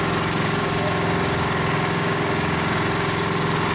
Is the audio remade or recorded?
remade